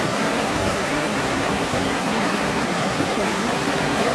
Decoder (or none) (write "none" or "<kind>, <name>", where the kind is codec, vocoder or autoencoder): codec, SNAC